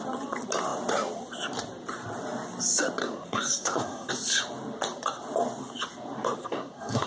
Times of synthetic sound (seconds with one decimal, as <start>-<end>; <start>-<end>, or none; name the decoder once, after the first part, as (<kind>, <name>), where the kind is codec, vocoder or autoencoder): 3.0-4.1 (codec, SNAC); 6.4-7.1